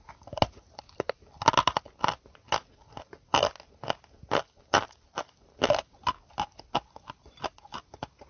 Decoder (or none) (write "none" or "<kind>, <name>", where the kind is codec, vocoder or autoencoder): none